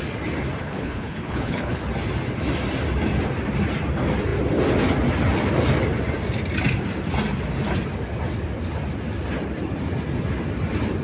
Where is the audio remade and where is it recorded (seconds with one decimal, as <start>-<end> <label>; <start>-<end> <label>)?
0.0-0.6 recorded; 0.6-1.8 remade; 1.8-11.0 recorded